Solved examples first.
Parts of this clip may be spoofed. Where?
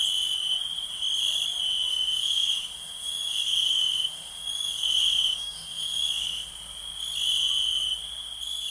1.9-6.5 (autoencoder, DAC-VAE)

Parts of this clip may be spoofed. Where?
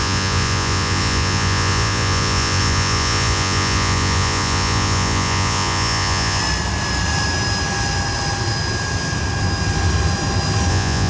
0.0-6.4 (vocoder, Vocos); 10.7-11.1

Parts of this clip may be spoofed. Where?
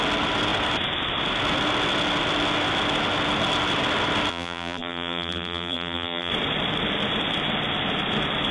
4.3-6.3 (vocoder, BigVGAN v2)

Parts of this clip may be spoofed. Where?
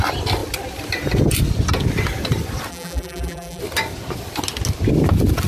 2.7-3.6 (vocoder, BigVGAN v2)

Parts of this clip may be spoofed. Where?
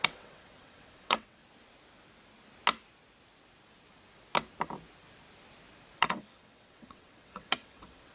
0.0-1.4 (vocoder, WaveNeXt); 6.0-8.1